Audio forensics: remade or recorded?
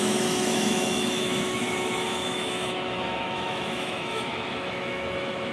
remade